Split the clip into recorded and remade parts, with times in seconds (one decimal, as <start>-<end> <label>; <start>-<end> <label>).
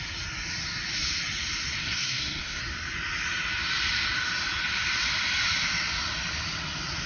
0.0-1.8 recorded; 1.8-2.6 remade; 2.6-7.1 recorded